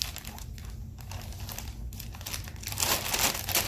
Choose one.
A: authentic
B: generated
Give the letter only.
A